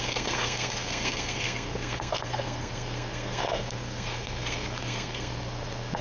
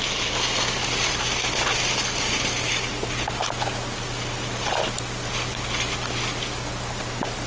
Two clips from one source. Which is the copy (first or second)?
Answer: first